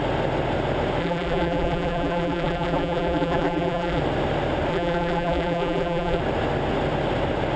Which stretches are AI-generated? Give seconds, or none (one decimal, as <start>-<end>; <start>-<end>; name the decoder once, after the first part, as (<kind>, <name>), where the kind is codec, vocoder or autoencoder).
1.0-4.0 (vocoder, BigVGAN v2); 4.7-6.2